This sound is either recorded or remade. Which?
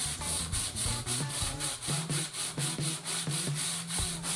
remade